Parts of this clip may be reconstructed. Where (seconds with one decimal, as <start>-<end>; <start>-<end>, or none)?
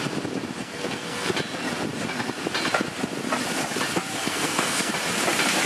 0.6-1.3; 4.2-4.9